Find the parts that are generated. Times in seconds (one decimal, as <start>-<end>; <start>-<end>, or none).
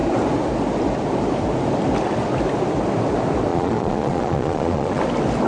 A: 3.5-5.0